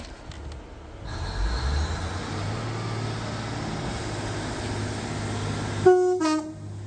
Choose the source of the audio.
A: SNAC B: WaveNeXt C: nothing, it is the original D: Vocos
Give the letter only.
C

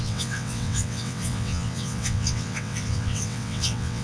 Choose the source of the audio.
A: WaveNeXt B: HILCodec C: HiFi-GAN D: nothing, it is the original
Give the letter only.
A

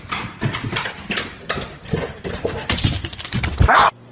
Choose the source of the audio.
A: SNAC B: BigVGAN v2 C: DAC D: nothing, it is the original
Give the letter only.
D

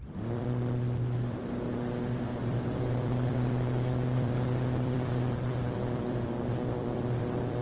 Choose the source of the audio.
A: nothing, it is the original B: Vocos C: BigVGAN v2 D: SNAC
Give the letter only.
C